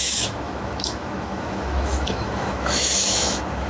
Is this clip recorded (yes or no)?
no